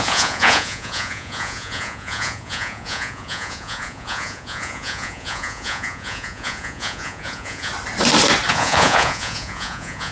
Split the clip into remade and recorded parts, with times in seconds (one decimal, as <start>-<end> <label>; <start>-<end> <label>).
0.0-7.7 remade; 7.7-8.5 recorded; 8.5-10.1 remade